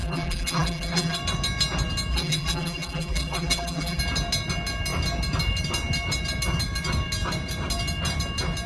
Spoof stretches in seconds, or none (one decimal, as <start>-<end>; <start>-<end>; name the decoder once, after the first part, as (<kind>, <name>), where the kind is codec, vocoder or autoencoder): 0.0-1.2 (vocoder, BigVGAN v2); 2.1-4.0